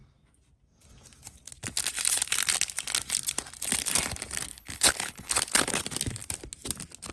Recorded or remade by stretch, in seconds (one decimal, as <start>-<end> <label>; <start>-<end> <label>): 0.0-4.5 recorded; 4.5-5.8 remade; 5.8-7.1 recorded